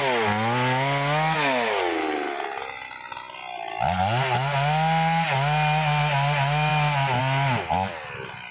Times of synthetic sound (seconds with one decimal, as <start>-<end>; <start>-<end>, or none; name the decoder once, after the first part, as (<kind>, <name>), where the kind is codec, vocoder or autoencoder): none